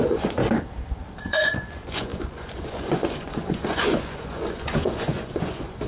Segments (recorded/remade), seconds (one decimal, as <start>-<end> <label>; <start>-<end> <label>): 0.0-0.4 remade; 0.4-1.2 recorded; 1.2-5.9 remade

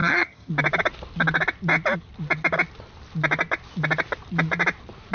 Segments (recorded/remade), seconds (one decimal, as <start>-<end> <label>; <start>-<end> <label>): 0.0-0.5 remade; 0.5-5.1 recorded

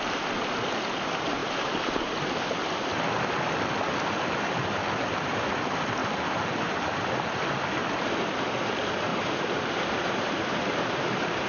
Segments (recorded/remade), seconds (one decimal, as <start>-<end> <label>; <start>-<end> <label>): 0.0-1.4 recorded; 1.4-2.0 remade; 2.0-6.0 recorded; 6.0-7.0 remade; 7.0-7.8 recorded; 7.8-8.3 remade; 8.3-9.1 recorded; 9.1-11.5 remade

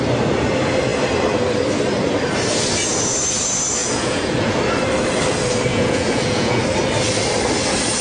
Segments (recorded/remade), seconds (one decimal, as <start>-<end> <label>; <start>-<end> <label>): 0.0-3.8 recorded; 3.8-4.6 remade; 4.6-5.7 recorded; 5.7-6.6 remade; 6.6-8.0 recorded

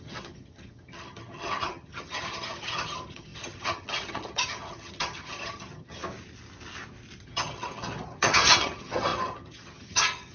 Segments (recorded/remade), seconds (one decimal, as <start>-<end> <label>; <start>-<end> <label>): 0.0-6.0 remade; 6.0-7.2 recorded; 7.2-10.3 remade

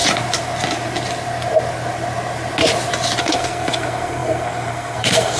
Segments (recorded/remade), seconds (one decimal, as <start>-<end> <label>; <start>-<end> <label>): 0.0-3.2 recorded; 3.2-5.4 remade

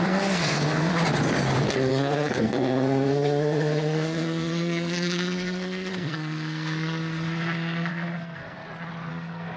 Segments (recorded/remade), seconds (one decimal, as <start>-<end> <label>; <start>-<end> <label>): 0.0-0.9 remade; 0.9-1.9 recorded; 1.9-8.6 remade; 8.6-9.1 recorded; 9.1-9.6 remade